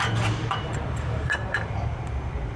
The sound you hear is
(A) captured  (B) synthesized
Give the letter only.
B